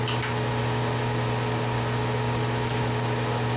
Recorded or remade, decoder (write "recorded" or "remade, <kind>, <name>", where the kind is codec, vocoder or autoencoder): recorded